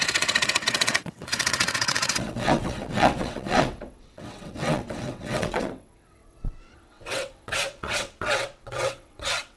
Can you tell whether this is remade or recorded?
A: remade